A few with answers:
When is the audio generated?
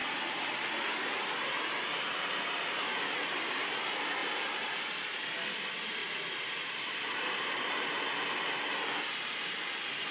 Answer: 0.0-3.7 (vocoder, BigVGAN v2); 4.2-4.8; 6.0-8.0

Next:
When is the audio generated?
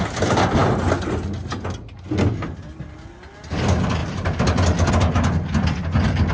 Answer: 4.0-4.9 (vocoder, BigVGAN v2)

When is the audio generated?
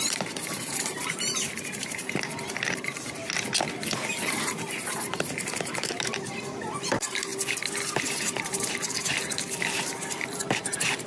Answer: 0.0-3.2 (vocoder, BigVGAN v2); 4.2-7.3; 8.0-11.1